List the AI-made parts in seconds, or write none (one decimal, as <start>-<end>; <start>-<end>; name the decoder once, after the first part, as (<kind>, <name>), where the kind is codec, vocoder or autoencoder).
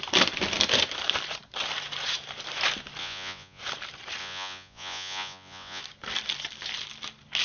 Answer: 3.0-3.6 (vocoder, Vocos); 4.2-5.8